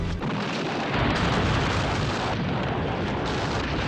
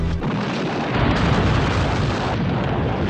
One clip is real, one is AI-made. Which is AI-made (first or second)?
first